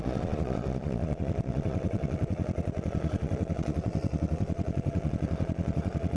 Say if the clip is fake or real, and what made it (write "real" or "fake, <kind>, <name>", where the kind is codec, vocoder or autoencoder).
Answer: fake, vocoder, Vocos